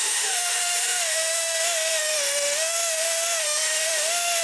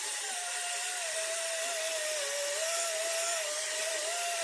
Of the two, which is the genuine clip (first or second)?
second